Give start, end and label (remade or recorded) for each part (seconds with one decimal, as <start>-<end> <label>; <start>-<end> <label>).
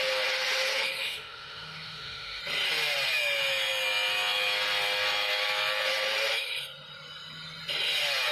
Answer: 0.0-1.0 recorded; 1.0-2.4 remade; 2.4-8.3 recorded